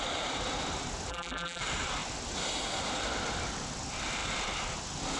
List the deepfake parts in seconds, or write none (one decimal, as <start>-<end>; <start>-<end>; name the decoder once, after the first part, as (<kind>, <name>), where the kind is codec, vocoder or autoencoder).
1.1-1.6 (vocoder, BigVGAN v2)